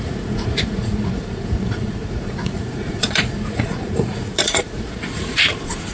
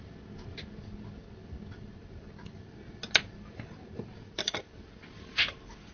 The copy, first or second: first